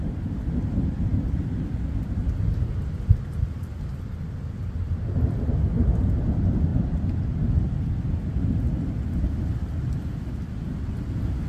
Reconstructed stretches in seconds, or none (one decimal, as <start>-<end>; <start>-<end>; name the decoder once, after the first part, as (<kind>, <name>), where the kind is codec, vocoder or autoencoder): none